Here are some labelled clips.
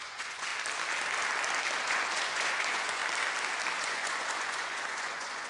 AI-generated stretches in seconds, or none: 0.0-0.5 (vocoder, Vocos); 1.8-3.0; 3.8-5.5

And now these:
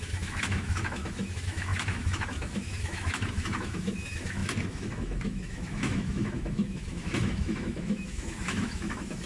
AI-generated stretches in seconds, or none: 0.0-9.3 (autoencoder, DAC-VAE)

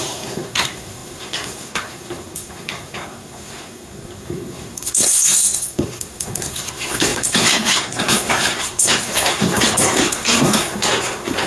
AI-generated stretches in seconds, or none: 0.0-11.5 (codec, SNAC)

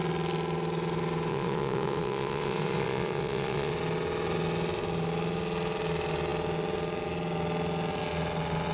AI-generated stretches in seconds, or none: 1.3-3.7 (vocoder, WaveNeXt)

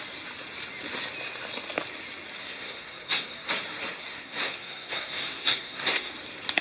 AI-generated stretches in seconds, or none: 2.4-3.5 (codec, SNAC); 4.0-6.1

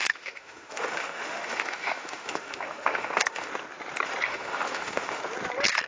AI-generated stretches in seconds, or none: 0.0-3.5 (autoencoder, DAC-VAE); 4.3-5.2